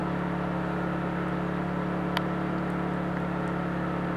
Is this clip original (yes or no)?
yes